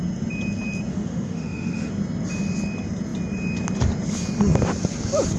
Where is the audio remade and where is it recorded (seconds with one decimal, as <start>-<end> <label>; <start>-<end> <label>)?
0.0-0.9 recorded; 0.9-1.9 remade; 1.9-5.4 recorded